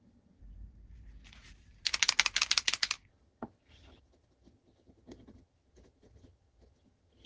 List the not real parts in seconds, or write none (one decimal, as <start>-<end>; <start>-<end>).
0.0-0.4; 3.1-7.3